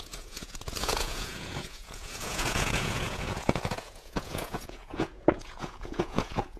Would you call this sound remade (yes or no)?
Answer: yes